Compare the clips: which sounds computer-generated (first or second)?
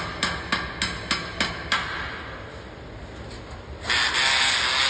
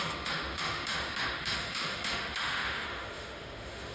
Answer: second